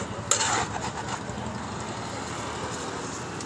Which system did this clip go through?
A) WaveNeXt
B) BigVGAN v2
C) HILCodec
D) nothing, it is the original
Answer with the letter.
D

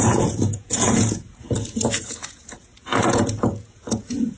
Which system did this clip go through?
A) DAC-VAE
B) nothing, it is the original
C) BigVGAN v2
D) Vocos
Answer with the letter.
D